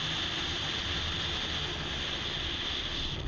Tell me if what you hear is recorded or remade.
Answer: recorded